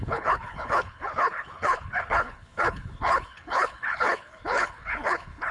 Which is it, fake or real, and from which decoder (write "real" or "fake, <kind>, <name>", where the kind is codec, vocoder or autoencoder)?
fake, codec, HILCodec